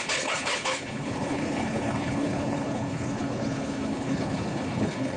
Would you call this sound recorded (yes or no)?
no